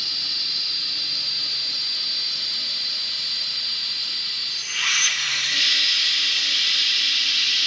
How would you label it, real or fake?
real